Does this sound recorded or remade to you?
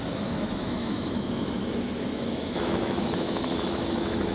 remade